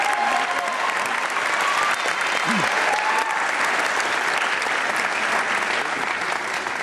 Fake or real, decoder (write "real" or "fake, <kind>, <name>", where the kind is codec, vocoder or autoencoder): real